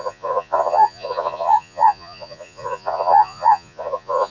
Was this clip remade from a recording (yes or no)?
yes